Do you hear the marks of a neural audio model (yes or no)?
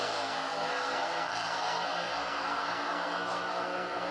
yes